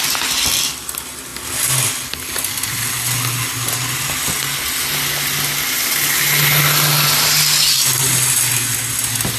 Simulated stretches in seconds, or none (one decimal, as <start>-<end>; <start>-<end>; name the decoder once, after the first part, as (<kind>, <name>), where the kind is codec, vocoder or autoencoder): none